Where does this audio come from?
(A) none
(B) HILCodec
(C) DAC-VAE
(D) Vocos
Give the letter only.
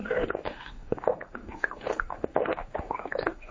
C